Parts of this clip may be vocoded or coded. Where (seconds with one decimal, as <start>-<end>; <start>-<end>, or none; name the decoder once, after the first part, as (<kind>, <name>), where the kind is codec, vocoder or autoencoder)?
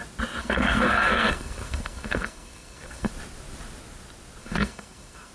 0.4-3.1 (codec, SNAC); 4.4-5.3